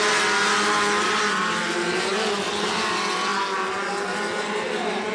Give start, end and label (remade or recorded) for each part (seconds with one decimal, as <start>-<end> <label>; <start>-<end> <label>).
0.0-1.4 recorded; 1.4-2.8 remade; 2.8-5.1 recorded